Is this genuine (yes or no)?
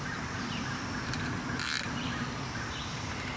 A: yes